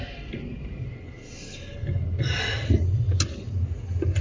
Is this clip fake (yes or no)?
no